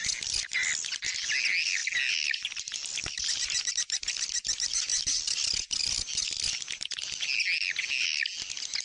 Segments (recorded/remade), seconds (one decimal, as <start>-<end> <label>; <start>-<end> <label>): 0.0-8.8 recorded